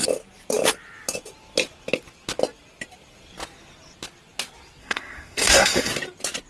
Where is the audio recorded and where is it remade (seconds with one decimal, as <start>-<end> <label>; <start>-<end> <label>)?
0.0-4.8 recorded; 4.8-5.9 remade; 5.9-6.5 recorded